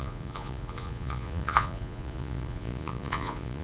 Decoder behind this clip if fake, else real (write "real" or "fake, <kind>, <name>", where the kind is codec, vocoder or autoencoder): fake, vocoder, Vocos